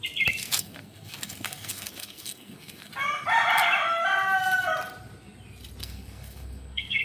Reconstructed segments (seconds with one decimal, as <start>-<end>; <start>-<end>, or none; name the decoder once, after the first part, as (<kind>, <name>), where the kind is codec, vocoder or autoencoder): 0.4-2.9 (codec, SNAC); 5.8-7.0